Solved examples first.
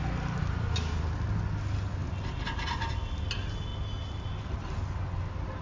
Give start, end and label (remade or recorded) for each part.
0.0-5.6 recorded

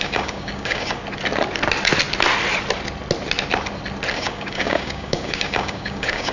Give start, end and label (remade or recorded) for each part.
0.0-1.0 remade; 1.0-4.1 recorded; 4.1-6.3 remade

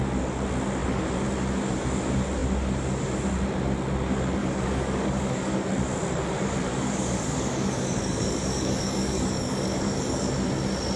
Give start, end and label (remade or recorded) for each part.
0.0-4.4 recorded; 4.4-5.7 remade; 5.7-6.7 recorded; 6.7-10.3 remade; 10.3-11.0 recorded

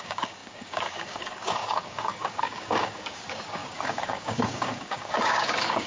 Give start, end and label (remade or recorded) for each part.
0.0-5.9 remade

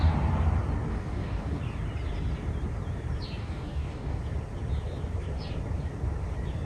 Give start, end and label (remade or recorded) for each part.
0.0-0.9 recorded; 0.9-1.6 remade; 1.6-3.4 recorded; 3.4-4.2 remade; 4.2-6.7 recorded

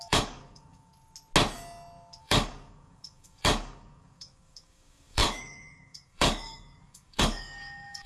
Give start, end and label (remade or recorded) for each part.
0.0-0.9 remade; 0.9-2.2 recorded; 2.2-8.1 remade

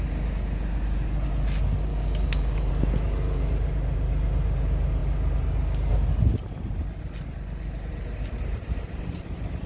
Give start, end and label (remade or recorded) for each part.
0.0-1.9 recorded; 1.9-2.7 remade; 2.7-9.7 recorded